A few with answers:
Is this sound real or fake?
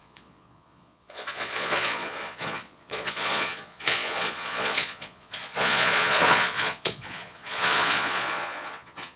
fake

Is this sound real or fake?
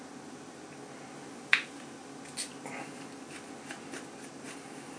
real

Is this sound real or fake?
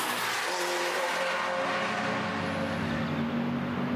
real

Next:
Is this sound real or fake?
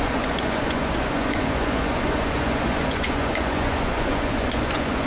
fake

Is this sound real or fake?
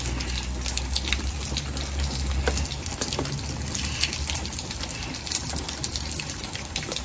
real